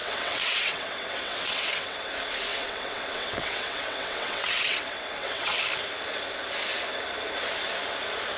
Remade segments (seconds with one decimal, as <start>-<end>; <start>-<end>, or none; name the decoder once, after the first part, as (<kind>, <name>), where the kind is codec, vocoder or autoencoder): 0.0-2.1 (vocoder, WaveNeXt); 2.5-5.6